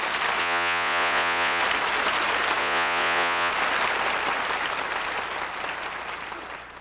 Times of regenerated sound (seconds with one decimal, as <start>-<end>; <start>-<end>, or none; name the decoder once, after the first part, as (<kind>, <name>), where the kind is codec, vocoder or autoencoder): 0.4-1.6 (vocoder, Vocos); 2.6-3.5